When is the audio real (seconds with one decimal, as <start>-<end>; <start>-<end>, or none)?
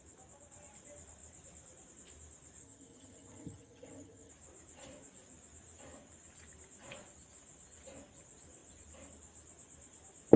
0.0-2.6; 4.3-10.4